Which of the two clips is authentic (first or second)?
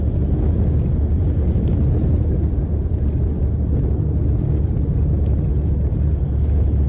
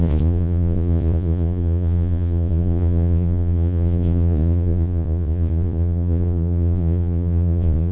first